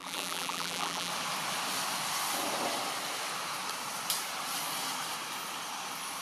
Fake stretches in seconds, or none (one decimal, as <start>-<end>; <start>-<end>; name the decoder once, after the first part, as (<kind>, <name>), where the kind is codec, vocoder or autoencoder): 0.0-1.1 (vocoder, BigVGAN v2)